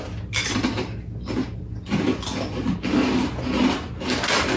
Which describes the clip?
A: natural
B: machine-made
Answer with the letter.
A